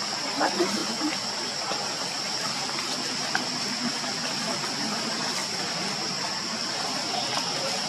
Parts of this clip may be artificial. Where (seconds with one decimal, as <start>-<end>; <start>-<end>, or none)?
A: 0.8-3.3